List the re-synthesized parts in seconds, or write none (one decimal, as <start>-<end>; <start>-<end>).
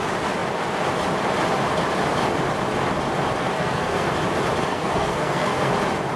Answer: 3.4-4.1; 4.7-5.7